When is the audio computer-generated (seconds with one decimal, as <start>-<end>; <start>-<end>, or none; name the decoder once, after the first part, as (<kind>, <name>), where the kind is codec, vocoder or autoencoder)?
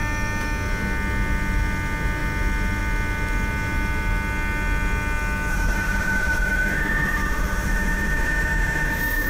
5.5-9.3 (autoencoder, DAC-VAE)